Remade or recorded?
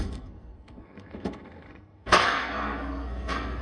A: remade